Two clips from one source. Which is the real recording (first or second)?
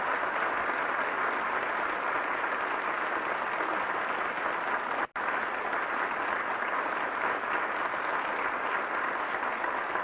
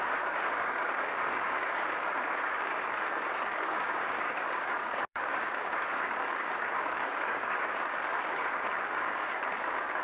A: first